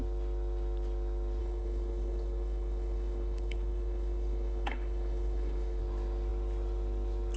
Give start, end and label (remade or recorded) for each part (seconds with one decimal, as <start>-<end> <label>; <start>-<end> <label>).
0.0-1.4 recorded; 1.4-5.8 remade; 5.8-7.4 recorded